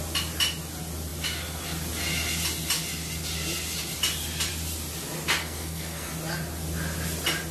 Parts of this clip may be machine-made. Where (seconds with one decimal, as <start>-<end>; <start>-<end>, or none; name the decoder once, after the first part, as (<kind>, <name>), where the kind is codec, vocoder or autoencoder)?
5.4-6.1 (codec, SNAC)